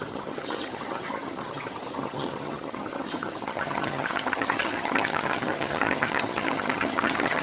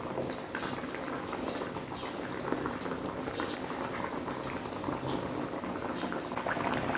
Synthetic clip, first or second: first